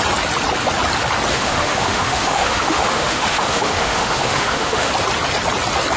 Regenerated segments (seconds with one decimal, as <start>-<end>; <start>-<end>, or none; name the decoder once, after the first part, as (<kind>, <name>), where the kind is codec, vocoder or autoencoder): 1.3-4.9 (autoencoder, DAC-VAE)